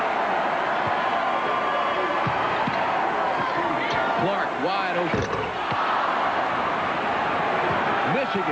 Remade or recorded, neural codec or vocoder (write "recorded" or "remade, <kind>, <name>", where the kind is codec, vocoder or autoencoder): recorded